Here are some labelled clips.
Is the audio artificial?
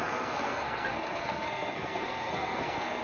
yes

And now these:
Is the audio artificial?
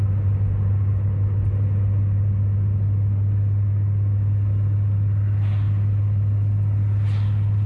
no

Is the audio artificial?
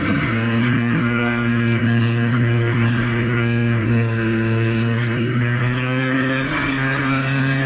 yes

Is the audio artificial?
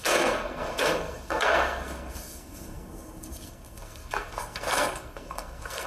yes